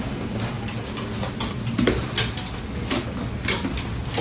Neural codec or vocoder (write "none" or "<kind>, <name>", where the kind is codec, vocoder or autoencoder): none